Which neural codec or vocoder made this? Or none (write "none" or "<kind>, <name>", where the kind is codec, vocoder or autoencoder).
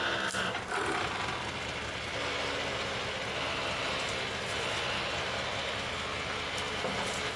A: none